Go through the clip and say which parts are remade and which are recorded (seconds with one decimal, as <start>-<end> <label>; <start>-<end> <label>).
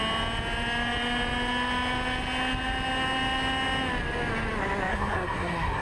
0.0-4.9 recorded; 4.9-5.8 remade